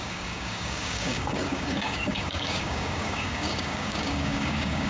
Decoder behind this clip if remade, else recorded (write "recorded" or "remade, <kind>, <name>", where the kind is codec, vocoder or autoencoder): remade, codec, DAC